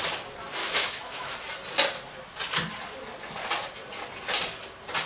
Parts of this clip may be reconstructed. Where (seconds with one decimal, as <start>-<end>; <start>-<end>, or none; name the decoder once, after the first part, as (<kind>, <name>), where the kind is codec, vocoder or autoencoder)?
0.6-1.3 (autoencoder, DAC-VAE)